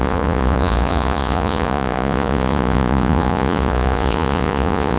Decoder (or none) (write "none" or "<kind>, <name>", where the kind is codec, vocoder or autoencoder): vocoder, Vocos